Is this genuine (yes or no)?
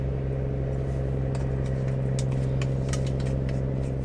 yes